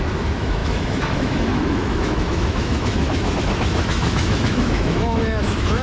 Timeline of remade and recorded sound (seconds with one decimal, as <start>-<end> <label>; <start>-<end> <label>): 0.0-5.8 remade